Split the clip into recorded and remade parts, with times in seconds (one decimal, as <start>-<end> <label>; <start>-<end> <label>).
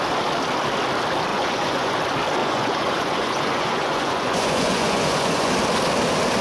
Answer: 0.0-1.3 recorded; 1.3-1.9 remade; 1.9-2.4 recorded; 2.4-5.5 remade; 5.5-6.4 recorded